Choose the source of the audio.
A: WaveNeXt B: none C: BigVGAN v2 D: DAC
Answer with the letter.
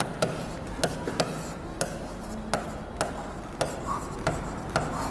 B